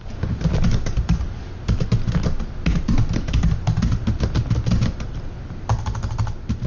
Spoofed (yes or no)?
no